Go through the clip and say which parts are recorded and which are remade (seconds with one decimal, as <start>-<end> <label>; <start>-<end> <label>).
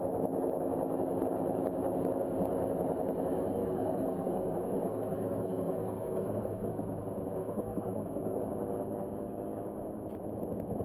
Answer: 0.0-3.6 recorded; 3.6-6.7 remade; 6.7-7.4 recorded; 7.4-8.4 remade; 8.4-10.8 recorded